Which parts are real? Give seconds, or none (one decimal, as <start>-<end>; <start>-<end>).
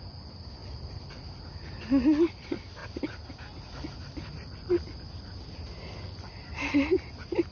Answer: 0.0-0.6; 1.3-7.5